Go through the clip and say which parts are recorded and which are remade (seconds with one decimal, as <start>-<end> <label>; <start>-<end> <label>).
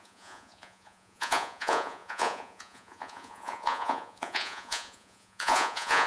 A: 0.0-6.1 remade